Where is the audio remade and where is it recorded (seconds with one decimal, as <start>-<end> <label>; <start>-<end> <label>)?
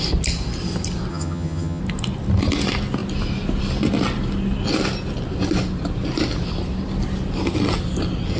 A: 0.0-1.1 recorded; 1.1-1.8 remade; 1.8-8.4 recorded